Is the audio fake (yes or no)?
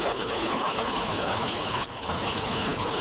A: yes